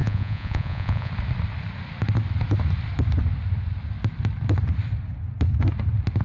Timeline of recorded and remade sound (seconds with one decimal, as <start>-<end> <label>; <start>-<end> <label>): 0.0-1.1 remade; 1.1-6.2 recorded